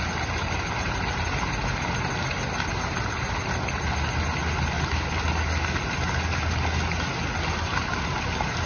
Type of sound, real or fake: real